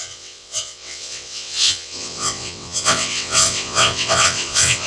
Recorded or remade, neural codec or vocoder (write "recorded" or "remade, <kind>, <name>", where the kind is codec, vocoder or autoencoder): remade, vocoder, WaveNeXt